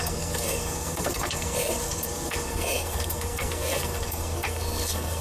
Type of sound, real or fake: fake